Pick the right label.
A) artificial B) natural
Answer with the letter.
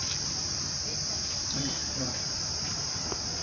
A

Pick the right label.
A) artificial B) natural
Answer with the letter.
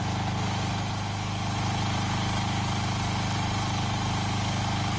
B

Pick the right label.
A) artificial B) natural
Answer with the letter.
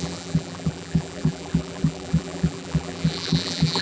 A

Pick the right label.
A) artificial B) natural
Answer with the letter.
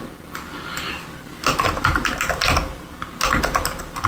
B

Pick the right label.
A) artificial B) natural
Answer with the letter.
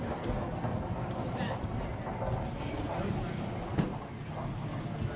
B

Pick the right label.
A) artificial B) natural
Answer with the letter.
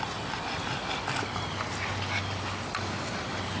B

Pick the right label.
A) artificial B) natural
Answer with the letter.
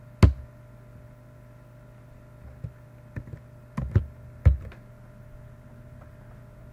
B